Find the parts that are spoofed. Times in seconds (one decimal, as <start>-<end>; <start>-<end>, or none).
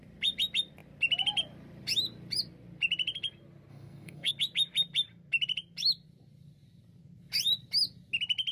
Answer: 3.7-4.3